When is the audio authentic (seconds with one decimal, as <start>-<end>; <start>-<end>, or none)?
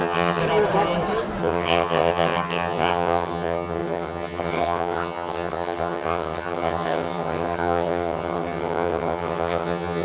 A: 0.4-1.4